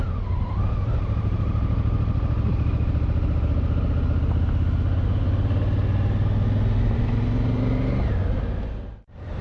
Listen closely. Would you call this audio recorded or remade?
recorded